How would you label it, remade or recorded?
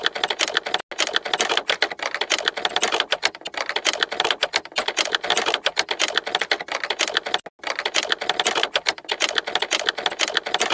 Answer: recorded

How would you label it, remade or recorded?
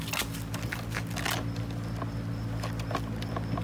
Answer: recorded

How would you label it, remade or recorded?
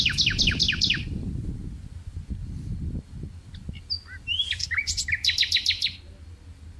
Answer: recorded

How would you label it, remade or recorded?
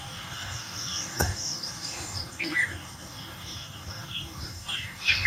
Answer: remade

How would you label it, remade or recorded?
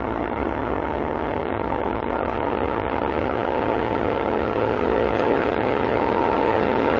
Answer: remade